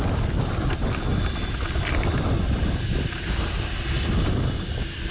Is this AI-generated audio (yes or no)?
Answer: no